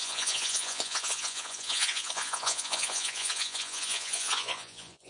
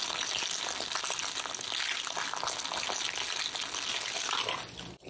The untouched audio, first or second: second